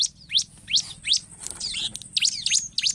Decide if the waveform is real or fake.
real